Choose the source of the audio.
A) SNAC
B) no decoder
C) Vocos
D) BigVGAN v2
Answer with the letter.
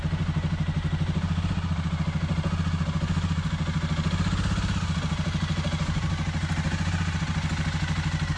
B